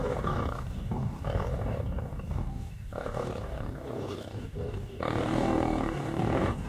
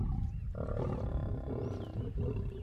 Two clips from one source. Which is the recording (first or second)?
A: second